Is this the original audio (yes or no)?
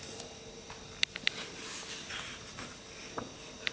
yes